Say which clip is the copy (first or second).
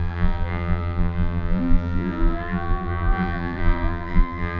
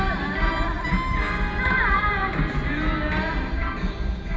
first